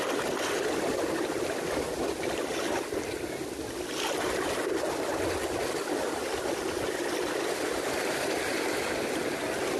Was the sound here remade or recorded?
recorded